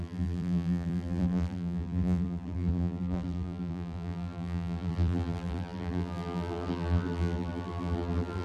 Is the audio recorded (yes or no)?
no